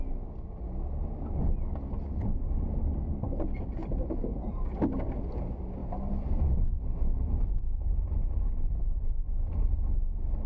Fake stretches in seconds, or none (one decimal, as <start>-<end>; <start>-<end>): 3.8-5.2; 5.8-9.5